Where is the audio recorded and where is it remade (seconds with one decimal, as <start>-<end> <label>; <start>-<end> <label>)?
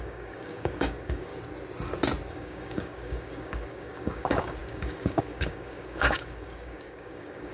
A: 0.0-1.3 remade; 1.3-2.3 recorded; 2.3-7.5 remade